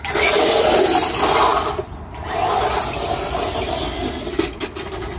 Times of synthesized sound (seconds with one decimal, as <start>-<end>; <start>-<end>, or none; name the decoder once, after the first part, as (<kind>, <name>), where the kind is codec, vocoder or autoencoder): none

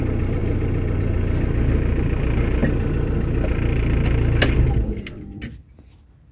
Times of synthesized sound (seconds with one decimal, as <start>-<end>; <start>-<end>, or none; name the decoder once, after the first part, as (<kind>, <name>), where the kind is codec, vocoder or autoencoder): none

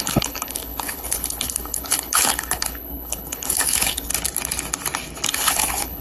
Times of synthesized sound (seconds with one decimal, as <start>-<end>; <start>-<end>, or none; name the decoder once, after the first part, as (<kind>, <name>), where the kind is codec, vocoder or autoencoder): 0.0-4.1 (codec, HILCodec); 5.3-6.0

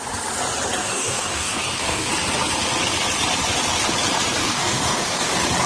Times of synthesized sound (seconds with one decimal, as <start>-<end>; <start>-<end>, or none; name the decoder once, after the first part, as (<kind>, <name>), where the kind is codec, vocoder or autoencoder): 0.8-2.1 (codec, DAC); 4.4-5.3